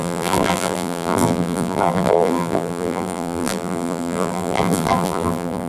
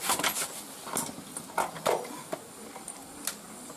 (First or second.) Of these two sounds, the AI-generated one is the first